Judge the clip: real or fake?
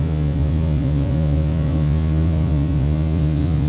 fake